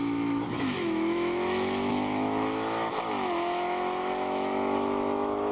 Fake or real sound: fake